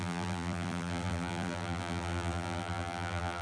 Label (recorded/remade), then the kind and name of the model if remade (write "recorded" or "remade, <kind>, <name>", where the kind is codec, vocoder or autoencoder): remade, vocoder, BigVGAN v2